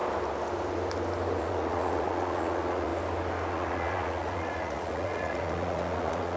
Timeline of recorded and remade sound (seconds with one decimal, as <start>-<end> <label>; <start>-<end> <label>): 0.0-1.4 recorded; 1.4-2.9 remade; 2.9-3.5 recorded; 3.5-6.4 remade